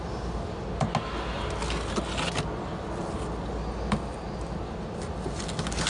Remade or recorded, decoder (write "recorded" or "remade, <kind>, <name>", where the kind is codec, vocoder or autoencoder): recorded